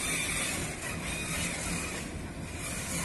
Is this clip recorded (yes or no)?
yes